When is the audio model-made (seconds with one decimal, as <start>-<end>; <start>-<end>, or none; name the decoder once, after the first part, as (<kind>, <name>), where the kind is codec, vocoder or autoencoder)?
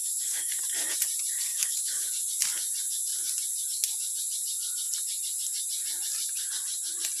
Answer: 0.0-0.6 (codec, DAC); 1.5-2.1